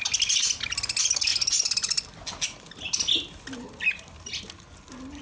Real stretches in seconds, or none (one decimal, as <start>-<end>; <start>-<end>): 0.0-5.2